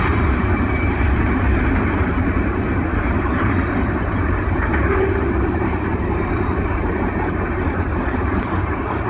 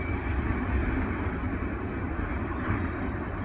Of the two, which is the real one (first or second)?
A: second